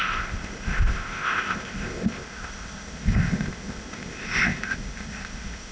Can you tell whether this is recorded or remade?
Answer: remade